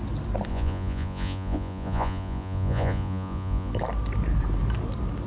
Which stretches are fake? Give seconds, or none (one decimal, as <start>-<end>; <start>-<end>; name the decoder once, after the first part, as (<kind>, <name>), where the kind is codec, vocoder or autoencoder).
0.5-3.7 (vocoder, Vocos)